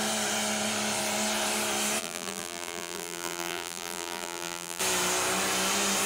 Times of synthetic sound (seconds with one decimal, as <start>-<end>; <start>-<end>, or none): 2.0-4.8